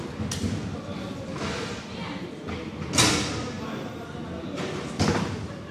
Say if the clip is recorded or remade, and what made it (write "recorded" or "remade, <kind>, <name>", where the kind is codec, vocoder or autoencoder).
recorded